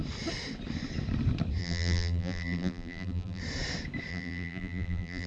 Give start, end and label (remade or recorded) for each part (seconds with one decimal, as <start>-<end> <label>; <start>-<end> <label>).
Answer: 0.0-1.6 recorded; 1.6-3.4 remade; 3.4-4.1 recorded; 4.1-5.3 remade